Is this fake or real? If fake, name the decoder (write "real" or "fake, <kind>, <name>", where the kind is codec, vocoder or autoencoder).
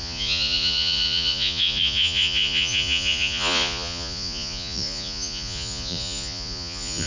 fake, vocoder, Vocos